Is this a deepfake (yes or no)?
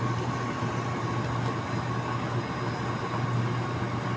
no